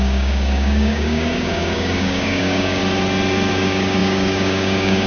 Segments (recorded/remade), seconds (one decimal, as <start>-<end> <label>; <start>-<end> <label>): 0.0-2.8 remade; 2.8-3.5 recorded; 3.5-5.1 remade